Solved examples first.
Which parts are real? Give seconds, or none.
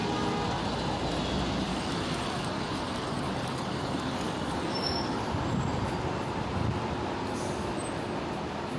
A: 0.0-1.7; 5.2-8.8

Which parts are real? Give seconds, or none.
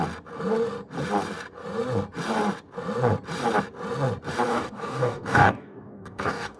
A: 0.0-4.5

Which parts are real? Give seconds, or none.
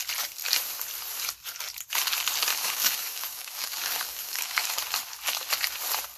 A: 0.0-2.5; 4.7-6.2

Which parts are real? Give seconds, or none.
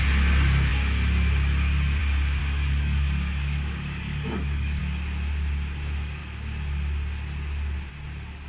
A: 0.0-2.4; 4.8-8.5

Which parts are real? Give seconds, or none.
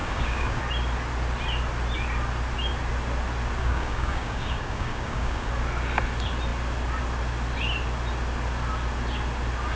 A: 0.6-3.6; 5.5-9.8